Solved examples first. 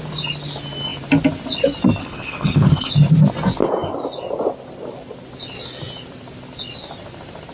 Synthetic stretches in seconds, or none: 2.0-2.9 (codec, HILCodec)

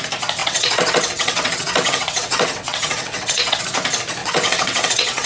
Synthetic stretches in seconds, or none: 0.4-3.6 (vocoder, WaveNeXt); 4.2-5.3

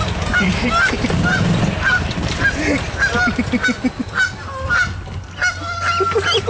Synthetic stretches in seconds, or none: 0.0-0.5 (vocoder, BigVGAN v2); 1.3-2.6

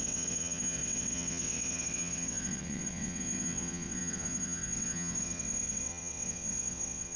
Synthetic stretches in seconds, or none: 0.0-7.2 (vocoder, WaveNeXt)